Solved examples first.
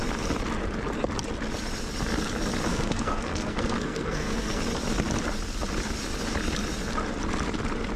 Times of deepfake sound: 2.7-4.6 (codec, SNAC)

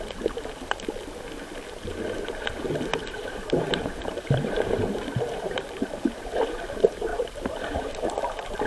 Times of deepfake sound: 2.9-6.4 (vocoder, BigVGAN v2); 7.1-8.7

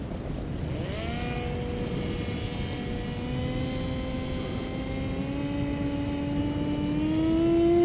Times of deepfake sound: none

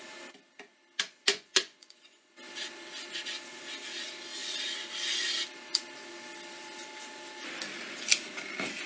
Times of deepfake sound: 1.3-2.3 (vocoder, Vocos)

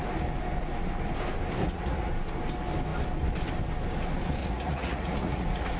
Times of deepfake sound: 1.6-2.1 (vocoder, Vocos); 4.4-5.8

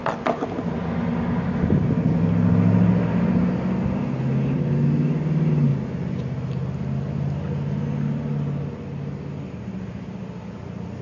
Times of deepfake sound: none